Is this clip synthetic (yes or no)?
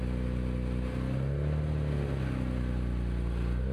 no